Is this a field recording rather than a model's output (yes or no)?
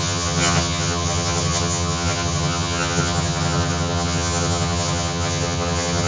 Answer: no